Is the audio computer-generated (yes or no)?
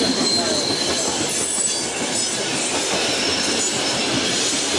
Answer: no